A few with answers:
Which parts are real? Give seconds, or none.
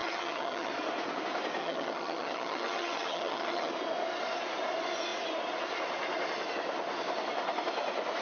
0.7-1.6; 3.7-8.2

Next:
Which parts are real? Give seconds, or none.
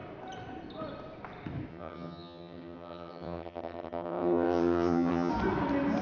0.0-1.7; 5.3-6.0